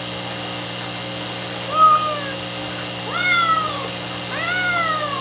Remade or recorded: recorded